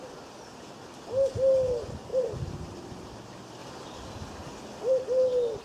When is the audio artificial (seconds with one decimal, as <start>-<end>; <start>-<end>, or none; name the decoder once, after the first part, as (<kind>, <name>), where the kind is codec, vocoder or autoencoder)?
2.1-2.9 (vocoder, BigVGAN v2)